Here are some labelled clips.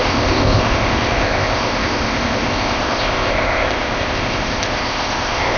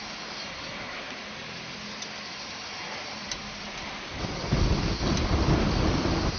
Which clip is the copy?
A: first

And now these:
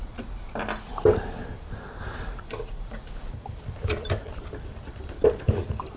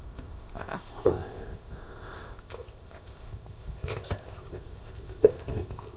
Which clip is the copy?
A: second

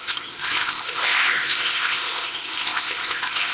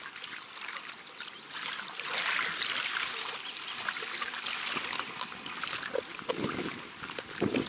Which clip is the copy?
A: first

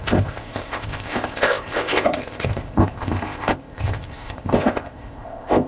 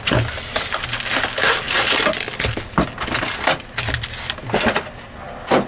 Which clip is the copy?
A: first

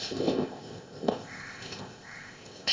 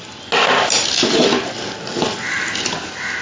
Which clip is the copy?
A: first